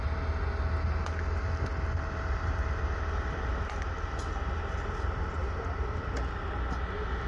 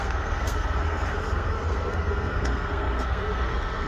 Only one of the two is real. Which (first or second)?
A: first